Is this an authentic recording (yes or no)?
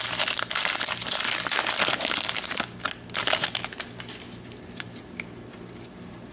yes